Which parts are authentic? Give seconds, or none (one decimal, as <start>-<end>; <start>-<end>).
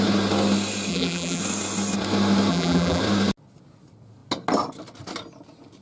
0.0-0.9; 1.4-2.5; 3.0-5.8